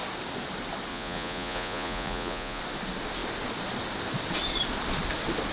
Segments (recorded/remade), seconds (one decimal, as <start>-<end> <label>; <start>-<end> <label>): 0.0-0.9 recorded; 0.9-2.6 remade; 2.6-5.5 recorded